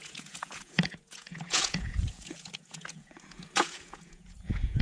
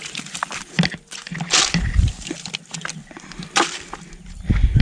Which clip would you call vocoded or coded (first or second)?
first